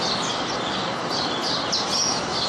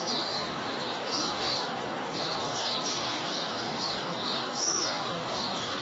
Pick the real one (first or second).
first